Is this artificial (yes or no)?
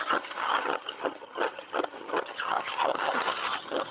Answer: yes